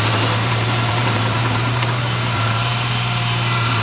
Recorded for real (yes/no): no